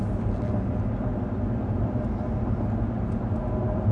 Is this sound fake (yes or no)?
no